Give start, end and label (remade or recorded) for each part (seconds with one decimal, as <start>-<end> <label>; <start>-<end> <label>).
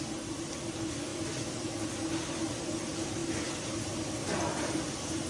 0.0-5.3 remade